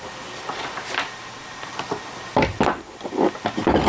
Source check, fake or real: real